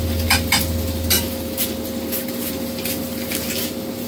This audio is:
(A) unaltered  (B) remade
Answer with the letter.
A